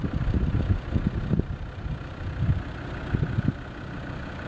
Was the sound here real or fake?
real